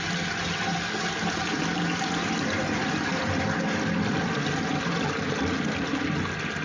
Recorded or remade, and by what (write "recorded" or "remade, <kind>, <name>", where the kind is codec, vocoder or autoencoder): recorded